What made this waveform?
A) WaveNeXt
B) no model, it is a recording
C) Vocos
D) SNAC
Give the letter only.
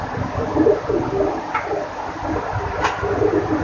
B